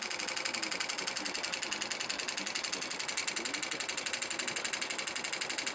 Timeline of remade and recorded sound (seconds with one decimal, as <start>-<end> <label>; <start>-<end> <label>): 0.0-5.7 recorded